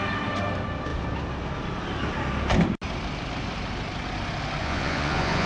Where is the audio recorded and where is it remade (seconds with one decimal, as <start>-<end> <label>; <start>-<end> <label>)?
0.0-4.6 recorded; 4.6-5.5 remade